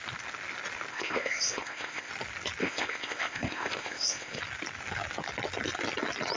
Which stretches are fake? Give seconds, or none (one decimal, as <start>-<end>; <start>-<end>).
0.9-2.1; 2.6-4.4